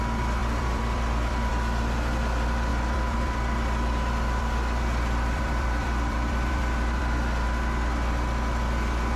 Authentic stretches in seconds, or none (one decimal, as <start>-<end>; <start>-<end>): 0.0-0.4; 1.5-2.7; 7.0-9.2